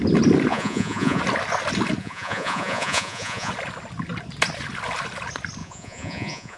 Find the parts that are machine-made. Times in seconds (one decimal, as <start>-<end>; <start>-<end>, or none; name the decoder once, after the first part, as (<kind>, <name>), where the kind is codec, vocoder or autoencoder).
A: 0.5-1.2 (vocoder, Vocos); 2.0-3.5; 5.6-6.6